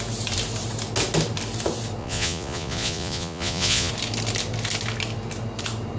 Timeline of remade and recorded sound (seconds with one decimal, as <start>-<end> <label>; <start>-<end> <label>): 0.0-2.0 recorded; 2.0-3.9 remade; 3.9-6.0 recorded